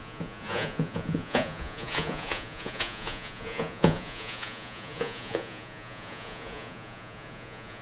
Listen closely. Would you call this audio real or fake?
fake